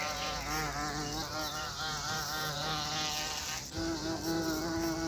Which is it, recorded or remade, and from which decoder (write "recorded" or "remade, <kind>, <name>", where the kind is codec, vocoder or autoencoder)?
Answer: recorded